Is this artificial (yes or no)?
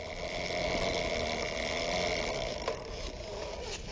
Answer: no